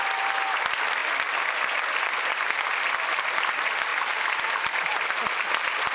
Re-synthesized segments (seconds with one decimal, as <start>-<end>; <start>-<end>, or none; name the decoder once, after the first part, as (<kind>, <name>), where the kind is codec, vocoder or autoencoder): none